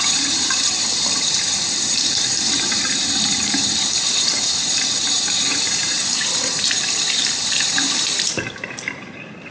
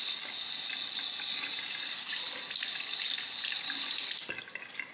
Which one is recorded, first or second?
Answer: second